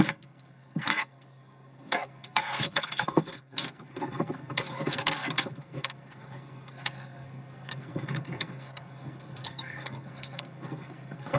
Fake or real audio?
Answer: fake